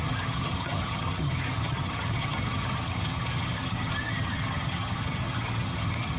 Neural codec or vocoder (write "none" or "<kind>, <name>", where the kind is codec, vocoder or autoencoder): vocoder, HiFi-GAN